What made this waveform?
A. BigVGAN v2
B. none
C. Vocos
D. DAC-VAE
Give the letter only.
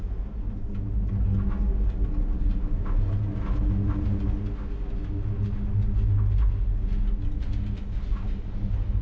B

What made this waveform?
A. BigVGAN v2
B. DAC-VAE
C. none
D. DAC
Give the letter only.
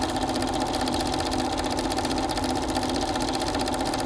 A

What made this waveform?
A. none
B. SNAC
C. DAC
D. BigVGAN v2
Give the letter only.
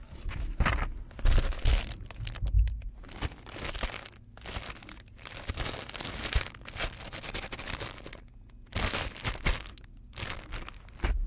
A